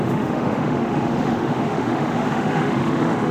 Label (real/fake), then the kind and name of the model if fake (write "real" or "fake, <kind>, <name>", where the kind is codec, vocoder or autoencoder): fake, autoencoder, DAC-VAE